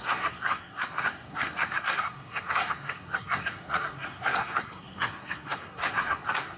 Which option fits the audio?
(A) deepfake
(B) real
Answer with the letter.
A